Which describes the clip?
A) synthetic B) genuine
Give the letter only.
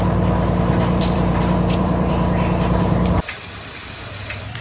A